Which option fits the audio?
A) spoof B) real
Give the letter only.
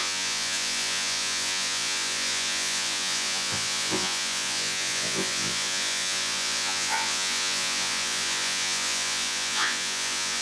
A